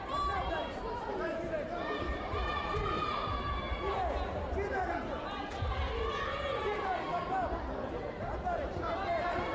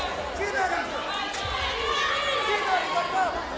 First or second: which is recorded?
second